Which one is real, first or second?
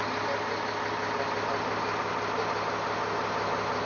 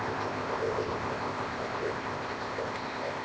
first